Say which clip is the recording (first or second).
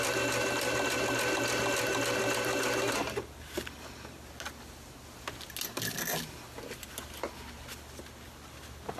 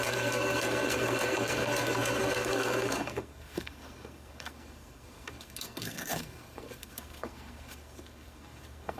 first